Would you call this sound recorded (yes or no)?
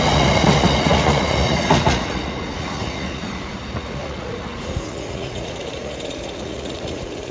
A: no